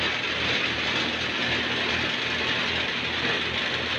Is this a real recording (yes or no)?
yes